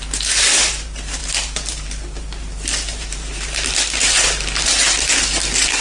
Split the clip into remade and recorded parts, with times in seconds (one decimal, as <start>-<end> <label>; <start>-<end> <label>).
0.0-5.8 remade